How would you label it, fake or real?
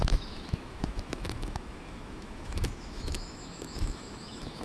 fake